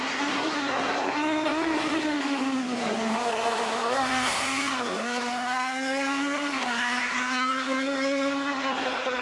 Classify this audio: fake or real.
fake